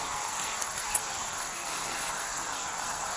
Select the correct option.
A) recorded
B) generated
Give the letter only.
B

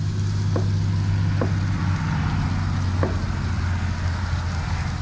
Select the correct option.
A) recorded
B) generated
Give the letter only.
A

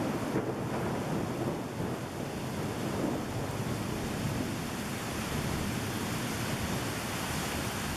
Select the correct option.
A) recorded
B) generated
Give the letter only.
A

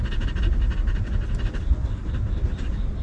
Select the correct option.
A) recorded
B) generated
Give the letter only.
A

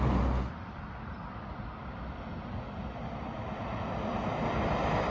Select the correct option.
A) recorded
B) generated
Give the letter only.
A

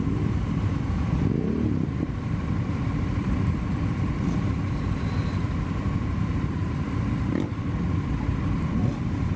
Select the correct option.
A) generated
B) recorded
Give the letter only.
A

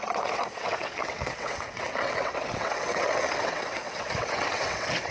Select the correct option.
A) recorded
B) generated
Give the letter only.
B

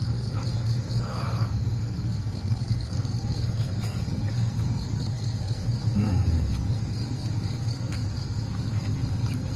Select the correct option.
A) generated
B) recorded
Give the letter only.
A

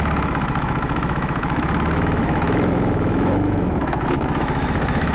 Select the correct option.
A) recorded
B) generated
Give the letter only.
B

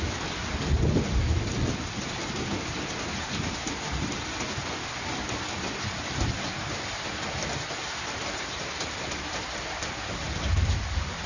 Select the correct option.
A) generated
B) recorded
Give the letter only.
A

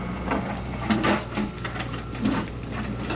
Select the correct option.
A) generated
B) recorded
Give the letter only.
B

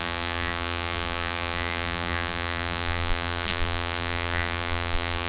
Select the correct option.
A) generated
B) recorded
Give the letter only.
A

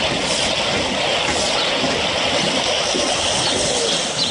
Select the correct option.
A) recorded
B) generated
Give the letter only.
A